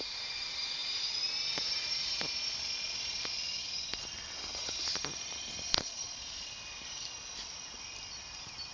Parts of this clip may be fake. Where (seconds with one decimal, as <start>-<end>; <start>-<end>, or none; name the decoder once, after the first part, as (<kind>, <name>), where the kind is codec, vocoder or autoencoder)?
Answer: none